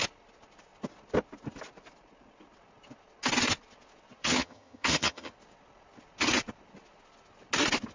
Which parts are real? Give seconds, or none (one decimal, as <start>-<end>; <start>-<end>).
0.0-4.2; 5.3-7.9